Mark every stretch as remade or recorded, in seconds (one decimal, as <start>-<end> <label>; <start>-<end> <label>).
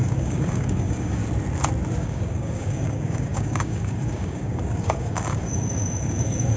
0.0-1.2 remade; 1.2-2.0 recorded; 2.0-6.6 remade